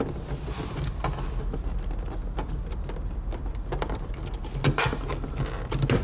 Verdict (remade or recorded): recorded